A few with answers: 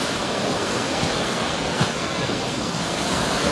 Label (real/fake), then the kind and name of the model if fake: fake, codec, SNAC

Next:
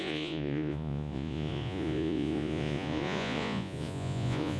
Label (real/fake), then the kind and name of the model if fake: fake, vocoder, Vocos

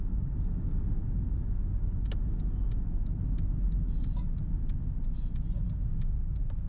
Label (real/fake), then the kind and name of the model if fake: real